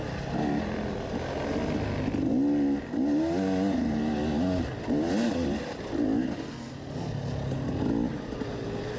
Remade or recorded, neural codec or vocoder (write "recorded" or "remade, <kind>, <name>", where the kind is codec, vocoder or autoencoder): recorded